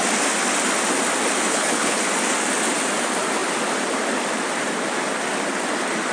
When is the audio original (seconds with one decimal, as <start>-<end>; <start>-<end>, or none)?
0.0-1.5; 2.0-6.1